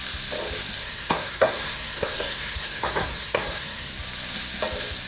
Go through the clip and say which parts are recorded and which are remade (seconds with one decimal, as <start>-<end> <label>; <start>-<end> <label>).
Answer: 0.0-0.8 recorded; 0.8-3.9 remade; 3.9-5.1 recorded